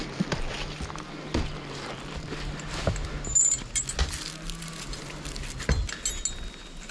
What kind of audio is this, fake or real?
real